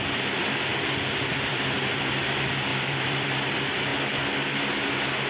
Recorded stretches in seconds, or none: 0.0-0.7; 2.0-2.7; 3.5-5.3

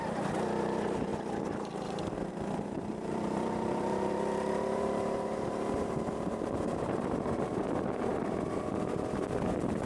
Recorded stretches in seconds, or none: 1.1-2.3